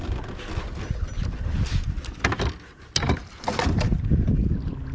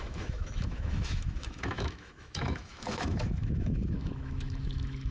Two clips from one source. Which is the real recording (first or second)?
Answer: first